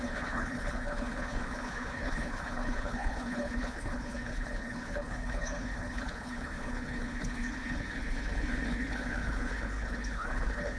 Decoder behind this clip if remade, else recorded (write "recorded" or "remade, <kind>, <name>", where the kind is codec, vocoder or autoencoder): remade, codec, HILCodec